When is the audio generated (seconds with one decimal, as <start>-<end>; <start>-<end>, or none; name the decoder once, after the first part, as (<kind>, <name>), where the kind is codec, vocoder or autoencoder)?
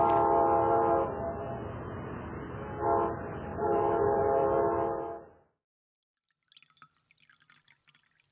3.5-4.2 (vocoder, BigVGAN v2)